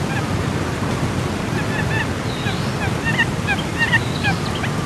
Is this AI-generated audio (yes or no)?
no